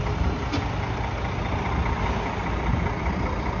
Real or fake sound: real